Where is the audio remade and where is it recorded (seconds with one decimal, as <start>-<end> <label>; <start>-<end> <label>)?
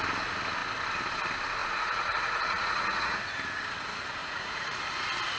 0.0-1.6 recorded; 1.6-3.2 remade; 3.2-4.2 recorded; 4.2-4.8 remade; 4.8-5.4 recorded